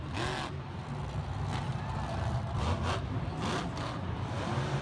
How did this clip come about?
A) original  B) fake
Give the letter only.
A